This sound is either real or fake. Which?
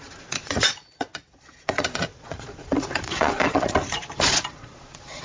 fake